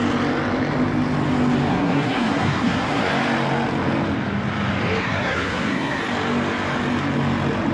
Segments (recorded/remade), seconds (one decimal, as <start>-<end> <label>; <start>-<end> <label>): 0.0-1.7 recorded; 1.7-3.1 remade; 3.1-5.0 recorded; 5.0-6.0 remade; 6.0-7.7 recorded